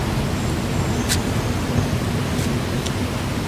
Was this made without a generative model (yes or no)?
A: yes